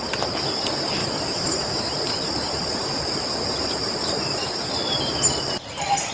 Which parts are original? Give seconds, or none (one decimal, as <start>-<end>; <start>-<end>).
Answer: 0.0-1.0; 4.7-6.1